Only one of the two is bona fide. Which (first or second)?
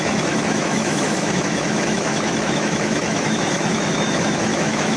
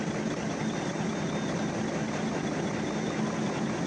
second